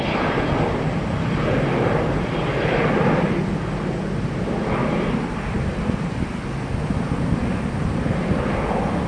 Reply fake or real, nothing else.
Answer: real